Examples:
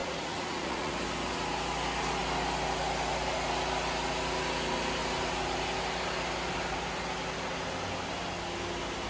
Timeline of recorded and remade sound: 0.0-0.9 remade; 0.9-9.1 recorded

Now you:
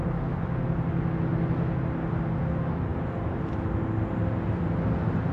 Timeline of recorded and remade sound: 0.0-5.3 recorded

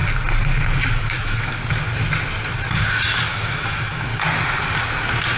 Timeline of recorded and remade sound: 0.0-1.0 recorded; 1.0-1.5 remade; 1.5-3.3 recorded; 3.3-4.1 remade; 4.1-5.4 recorded

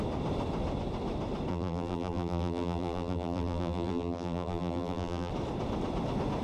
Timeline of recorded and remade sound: 0.0-1.5 recorded; 1.5-5.3 remade; 5.3-6.4 recorded

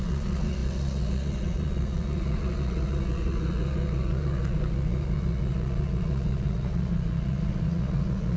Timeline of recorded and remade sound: 0.0-8.4 remade

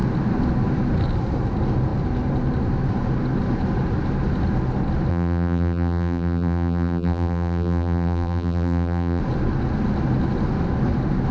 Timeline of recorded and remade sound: 0.0-5.1 recorded; 5.1-9.2 remade; 9.2-11.3 recorded

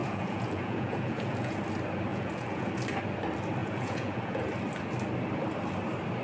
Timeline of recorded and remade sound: 0.0-1.6 remade; 1.6-2.1 recorded; 2.1-2.7 remade; 2.7-3.6 recorded; 3.6-4.5 remade; 4.5-6.2 recorded

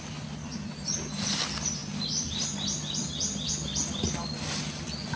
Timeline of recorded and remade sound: 0.0-5.2 recorded